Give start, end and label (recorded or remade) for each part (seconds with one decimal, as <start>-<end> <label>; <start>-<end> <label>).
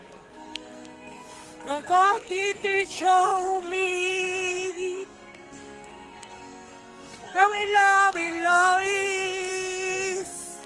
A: 0.0-10.7 remade